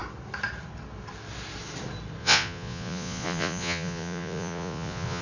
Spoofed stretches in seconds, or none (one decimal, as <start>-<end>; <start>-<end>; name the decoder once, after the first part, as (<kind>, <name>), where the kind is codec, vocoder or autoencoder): 2.2-5.2 (vocoder, Vocos)